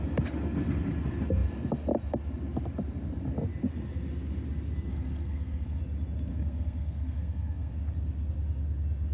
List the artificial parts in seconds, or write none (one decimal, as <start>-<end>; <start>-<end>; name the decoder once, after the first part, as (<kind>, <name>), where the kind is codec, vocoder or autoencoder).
4.9-5.8 (codec, SNAC); 6.3-7.7